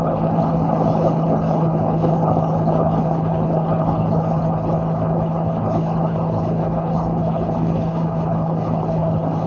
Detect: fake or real fake